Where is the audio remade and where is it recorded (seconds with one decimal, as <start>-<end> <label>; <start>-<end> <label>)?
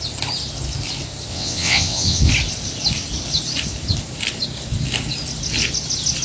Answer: 0.0-1.3 recorded; 1.3-2.3 remade; 2.3-6.2 recorded